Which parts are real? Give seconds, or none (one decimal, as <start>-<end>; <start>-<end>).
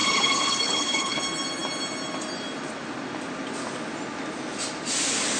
1.2-5.4